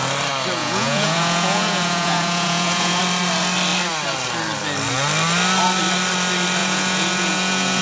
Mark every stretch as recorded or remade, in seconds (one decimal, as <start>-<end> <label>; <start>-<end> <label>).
0.0-0.6 recorded; 0.6-3.0 remade; 3.0-6.6 recorded; 6.6-7.8 remade